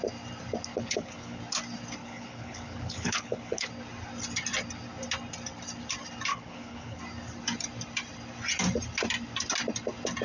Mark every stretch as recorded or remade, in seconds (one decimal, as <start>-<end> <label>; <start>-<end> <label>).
0.0-0.7 recorded; 0.7-1.4 remade; 1.4-2.0 recorded; 2.0-3.7 remade; 3.7-6.3 recorded; 6.3-7.0 remade; 7.0-10.2 recorded